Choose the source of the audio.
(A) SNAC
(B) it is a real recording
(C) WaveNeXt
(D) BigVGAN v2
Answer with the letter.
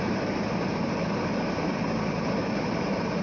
D